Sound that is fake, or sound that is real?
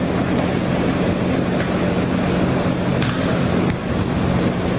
real